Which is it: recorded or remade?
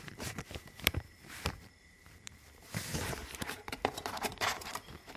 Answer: remade